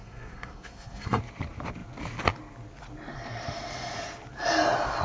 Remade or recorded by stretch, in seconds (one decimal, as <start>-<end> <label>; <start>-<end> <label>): 0.0-1.2 remade; 1.2-5.0 recorded